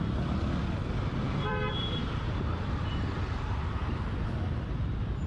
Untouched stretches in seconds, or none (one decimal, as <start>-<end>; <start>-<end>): 3.8-4.4